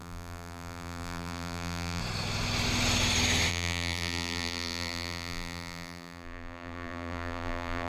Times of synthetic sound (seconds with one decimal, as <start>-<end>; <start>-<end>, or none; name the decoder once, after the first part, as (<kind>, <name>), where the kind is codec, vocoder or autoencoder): 0.0-2.0 (vocoder, BigVGAN v2); 3.5-7.9